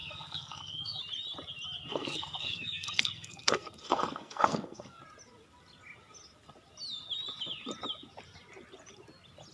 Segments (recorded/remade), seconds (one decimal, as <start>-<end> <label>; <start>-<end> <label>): 0.0-1.0 remade; 1.0-1.8 recorded; 1.8-5.0 remade; 5.0-9.5 recorded